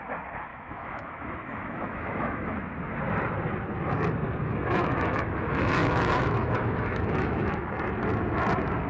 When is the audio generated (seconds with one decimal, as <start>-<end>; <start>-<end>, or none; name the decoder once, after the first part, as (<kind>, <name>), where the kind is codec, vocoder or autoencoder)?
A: 0.5-2.6 (autoencoder, DAC-VAE); 4.4-7.7